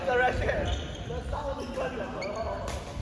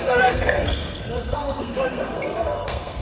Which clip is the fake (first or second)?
second